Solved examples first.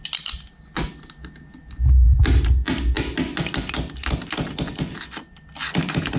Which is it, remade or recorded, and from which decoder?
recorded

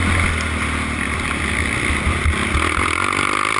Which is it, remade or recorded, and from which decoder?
recorded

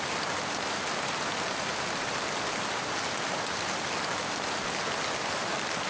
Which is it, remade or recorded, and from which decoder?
recorded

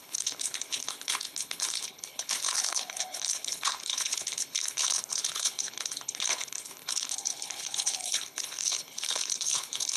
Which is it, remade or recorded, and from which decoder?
remade, codec, HILCodec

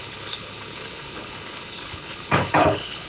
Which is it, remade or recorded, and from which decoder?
remade, codec, HILCodec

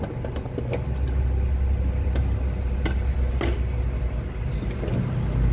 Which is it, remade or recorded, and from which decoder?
recorded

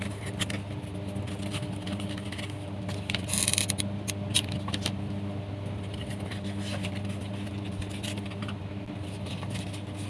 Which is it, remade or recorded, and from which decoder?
recorded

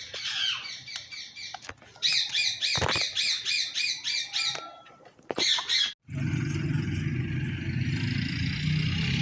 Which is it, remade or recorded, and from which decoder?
recorded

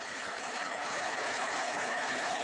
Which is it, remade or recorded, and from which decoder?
remade, codec, HILCodec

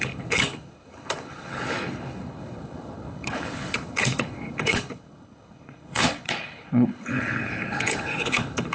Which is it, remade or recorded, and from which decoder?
remade, codec, HILCodec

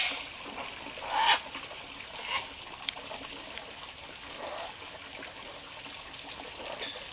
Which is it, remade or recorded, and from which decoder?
recorded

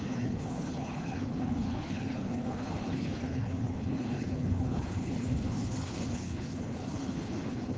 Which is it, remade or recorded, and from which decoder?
remade, codec, HILCodec